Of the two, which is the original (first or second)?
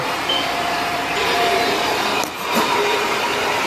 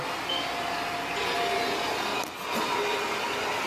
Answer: second